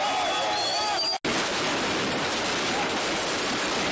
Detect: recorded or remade recorded